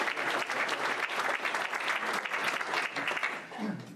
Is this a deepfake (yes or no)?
no